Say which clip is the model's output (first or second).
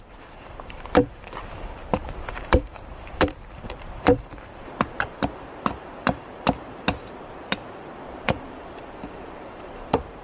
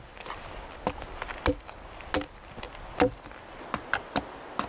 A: first